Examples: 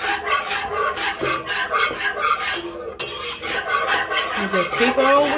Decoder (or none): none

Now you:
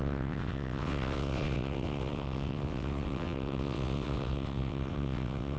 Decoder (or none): vocoder, WaveNeXt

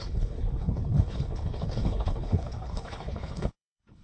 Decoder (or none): codec, HILCodec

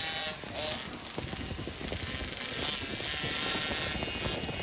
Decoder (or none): none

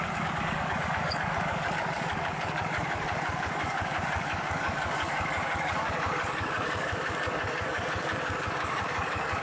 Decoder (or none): codec, DAC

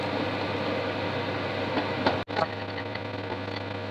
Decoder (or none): none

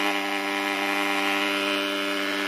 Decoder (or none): none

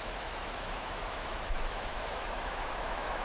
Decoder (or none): autoencoder, DAC-VAE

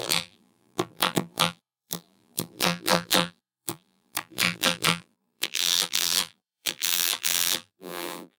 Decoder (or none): vocoder, BigVGAN v2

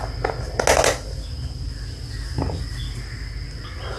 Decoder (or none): none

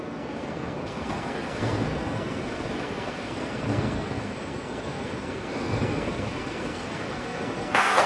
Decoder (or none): codec, SNAC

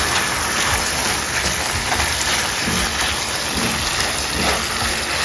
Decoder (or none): none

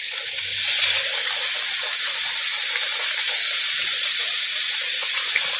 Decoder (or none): none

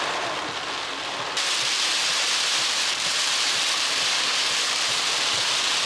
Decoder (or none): none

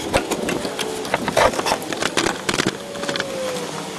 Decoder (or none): none